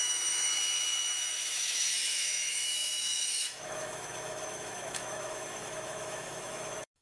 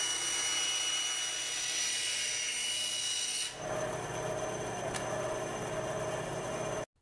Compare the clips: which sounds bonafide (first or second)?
second